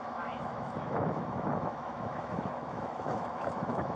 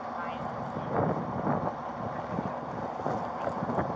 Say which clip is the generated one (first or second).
first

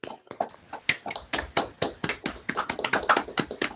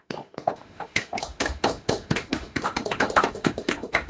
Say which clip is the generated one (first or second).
second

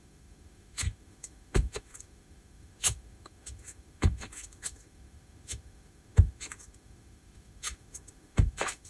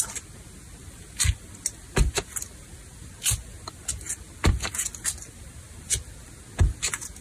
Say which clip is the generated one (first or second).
first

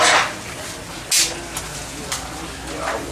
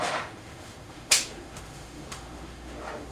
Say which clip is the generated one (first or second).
second